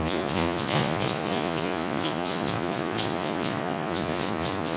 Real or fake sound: fake